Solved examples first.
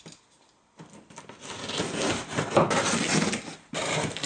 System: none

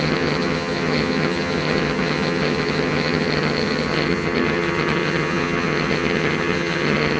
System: vocoder, HiFi-GAN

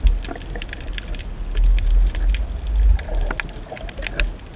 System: none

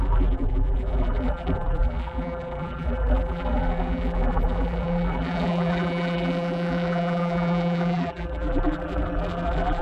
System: vocoder, BigVGAN v2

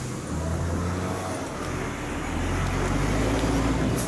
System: none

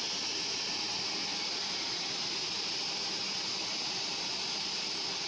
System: none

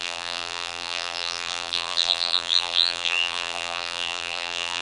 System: vocoder, BigVGAN v2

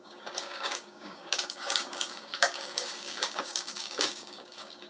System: codec, DAC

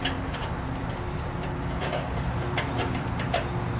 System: vocoder, BigVGAN v2